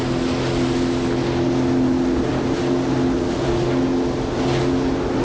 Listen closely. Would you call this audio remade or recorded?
recorded